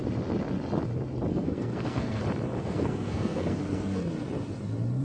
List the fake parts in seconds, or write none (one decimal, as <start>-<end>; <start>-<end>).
1.3-2.2; 2.6-4.0